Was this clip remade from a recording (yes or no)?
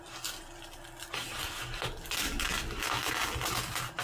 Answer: no